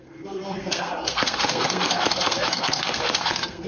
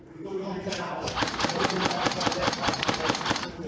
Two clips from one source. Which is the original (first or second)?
second